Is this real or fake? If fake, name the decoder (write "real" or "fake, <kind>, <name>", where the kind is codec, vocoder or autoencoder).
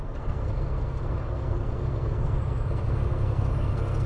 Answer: fake, codec, SNAC